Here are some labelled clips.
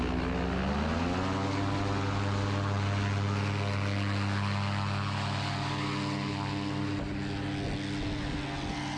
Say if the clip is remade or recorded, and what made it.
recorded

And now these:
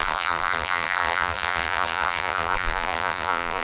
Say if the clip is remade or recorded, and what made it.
remade, vocoder, BigVGAN v2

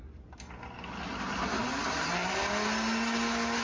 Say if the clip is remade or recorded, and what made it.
recorded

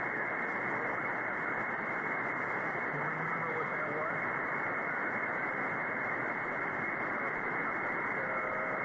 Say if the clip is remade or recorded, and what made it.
recorded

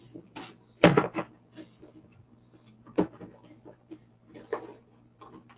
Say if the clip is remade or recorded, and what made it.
remade, vocoder, BigVGAN v2